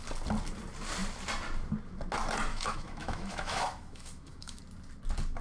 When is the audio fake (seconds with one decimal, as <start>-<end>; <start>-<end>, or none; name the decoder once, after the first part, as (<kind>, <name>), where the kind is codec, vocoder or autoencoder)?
2.5-4.6 (autoencoder, DAC-VAE)